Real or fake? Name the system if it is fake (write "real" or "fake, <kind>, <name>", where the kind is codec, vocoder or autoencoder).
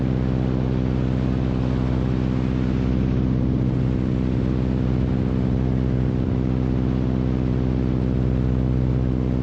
real